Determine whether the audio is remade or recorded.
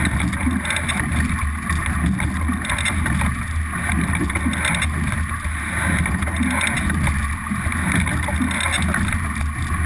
recorded